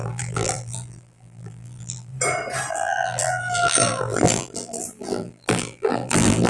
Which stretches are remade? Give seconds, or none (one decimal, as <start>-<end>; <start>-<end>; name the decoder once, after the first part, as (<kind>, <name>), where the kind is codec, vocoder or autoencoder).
0.0-2.1 (vocoder, BigVGAN v2); 2.7-6.5